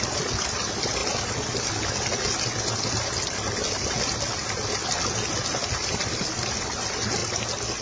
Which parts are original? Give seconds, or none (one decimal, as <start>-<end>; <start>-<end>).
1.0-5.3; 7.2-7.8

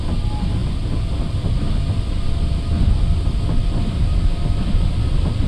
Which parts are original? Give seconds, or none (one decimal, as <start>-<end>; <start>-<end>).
0.0-5.5

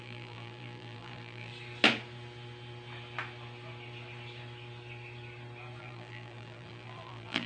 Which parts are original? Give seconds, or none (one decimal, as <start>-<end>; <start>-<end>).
1.5-5.8

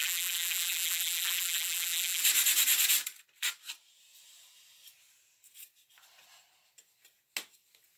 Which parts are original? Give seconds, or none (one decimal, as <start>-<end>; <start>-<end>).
2.2-8.0

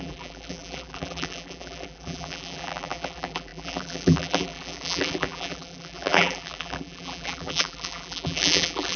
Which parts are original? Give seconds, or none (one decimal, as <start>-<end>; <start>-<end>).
none

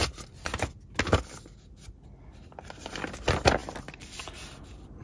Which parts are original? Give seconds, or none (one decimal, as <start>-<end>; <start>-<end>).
0.0-5.0